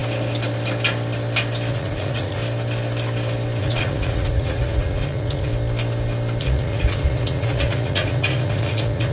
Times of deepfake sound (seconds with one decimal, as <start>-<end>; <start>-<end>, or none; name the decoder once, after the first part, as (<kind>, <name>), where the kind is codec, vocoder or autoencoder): 1.7-2.4 (vocoder, Vocos); 3.6-5.5; 6.4-9.1